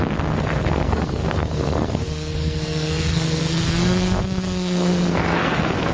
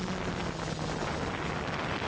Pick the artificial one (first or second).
first